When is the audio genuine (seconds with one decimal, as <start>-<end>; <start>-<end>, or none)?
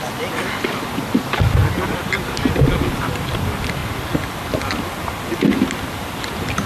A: 0.0-6.7